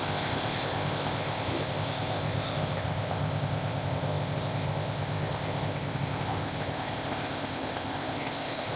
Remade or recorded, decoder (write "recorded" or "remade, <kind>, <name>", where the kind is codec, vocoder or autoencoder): remade, codec, ZipCodec